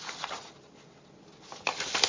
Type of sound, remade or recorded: recorded